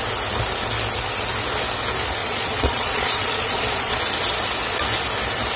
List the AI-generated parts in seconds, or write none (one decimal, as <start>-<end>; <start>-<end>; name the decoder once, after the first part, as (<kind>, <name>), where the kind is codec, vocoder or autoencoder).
2.2-4.0 (vocoder, Vocos)